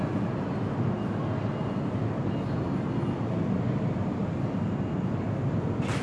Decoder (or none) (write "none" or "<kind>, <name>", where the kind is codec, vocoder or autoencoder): none